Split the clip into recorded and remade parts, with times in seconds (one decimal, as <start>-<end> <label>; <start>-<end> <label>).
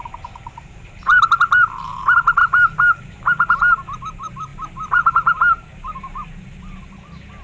0.0-7.4 remade